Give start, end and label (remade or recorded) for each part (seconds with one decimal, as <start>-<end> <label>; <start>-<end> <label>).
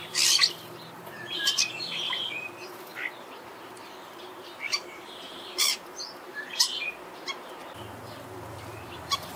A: 0.0-2.9 remade; 2.9-3.4 recorded; 3.4-7.6 remade; 7.6-8.5 recorded; 8.5-9.4 remade